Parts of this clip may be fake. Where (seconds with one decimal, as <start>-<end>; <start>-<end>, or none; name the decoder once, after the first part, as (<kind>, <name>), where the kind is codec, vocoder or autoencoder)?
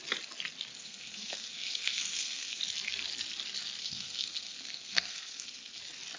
0.7-2.6 (codec, SNAC); 3.8-5.8